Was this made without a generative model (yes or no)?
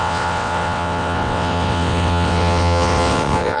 no